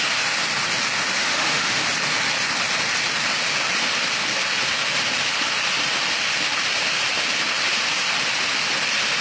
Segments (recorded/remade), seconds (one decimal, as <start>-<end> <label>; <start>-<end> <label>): 0.0-1.2 recorded; 1.2-1.8 remade; 1.8-9.2 recorded